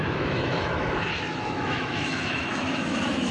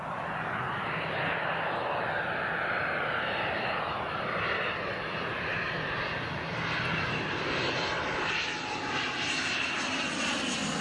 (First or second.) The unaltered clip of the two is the second